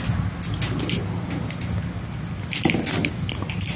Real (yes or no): yes